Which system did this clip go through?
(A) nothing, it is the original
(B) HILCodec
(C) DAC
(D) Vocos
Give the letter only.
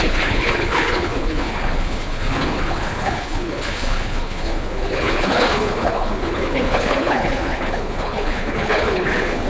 B